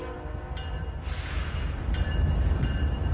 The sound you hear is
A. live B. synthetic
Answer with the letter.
A